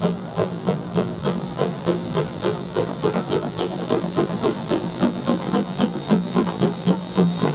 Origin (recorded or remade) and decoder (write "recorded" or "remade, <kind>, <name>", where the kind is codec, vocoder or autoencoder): remade, vocoder, BigVGAN v2